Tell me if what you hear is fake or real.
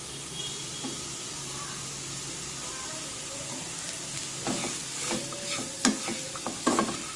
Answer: real